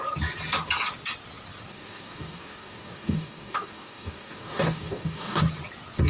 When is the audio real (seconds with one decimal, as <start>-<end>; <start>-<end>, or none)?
0.0-1.7; 5.4-6.1

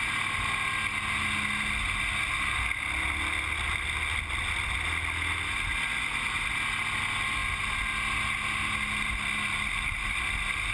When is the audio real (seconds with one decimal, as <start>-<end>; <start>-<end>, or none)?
0.0-10.7

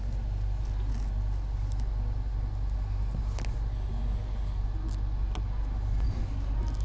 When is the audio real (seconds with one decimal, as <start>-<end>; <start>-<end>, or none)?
0.0-3.7; 4.6-6.8

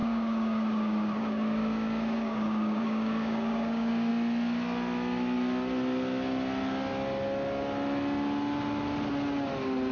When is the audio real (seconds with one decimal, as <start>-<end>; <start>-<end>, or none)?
4.1-9.9

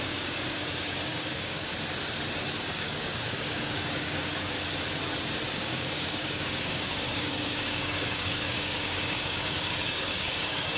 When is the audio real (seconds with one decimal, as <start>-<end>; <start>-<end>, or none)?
1.7-2.6; 4.6-5.5

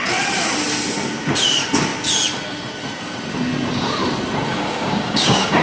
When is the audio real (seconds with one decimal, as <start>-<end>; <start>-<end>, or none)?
0.0-4.5

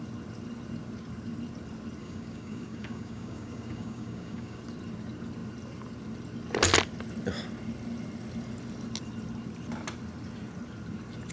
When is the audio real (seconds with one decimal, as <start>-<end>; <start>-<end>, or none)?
0.0-2.0; 4.6-11.3

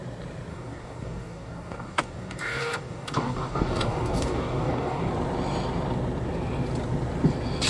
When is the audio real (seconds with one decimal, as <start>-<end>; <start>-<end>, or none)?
0.0-0.5; 5.1-7.7